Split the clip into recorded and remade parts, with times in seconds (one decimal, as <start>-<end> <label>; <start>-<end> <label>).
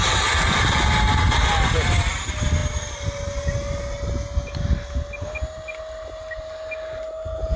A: 0.0-7.6 recorded